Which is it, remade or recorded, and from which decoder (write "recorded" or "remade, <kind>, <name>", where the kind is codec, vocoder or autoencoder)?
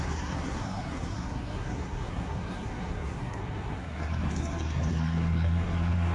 remade, codec, SNAC